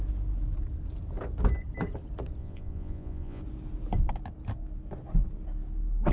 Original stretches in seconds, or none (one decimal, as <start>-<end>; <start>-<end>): 0.0-2.4; 3.4-6.1

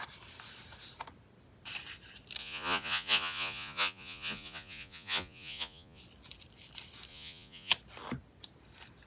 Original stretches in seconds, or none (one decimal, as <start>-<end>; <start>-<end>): 0.0-2.4; 6.0-7.1; 7.7-9.1

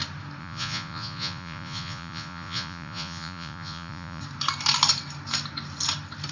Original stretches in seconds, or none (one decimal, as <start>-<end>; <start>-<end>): 0.0-0.4; 4.2-6.3